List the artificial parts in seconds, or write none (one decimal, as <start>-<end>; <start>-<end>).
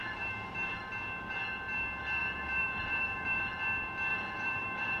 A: 0.0-0.8; 2.2-3.5; 4.1-5.0